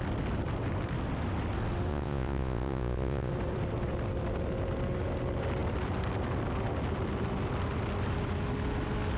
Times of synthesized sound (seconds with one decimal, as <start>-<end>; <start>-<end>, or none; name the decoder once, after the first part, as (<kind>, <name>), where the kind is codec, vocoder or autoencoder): 1.9-3.3 (vocoder, Vocos)